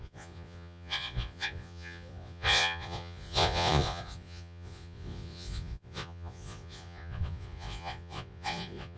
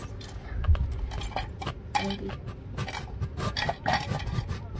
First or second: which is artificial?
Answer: first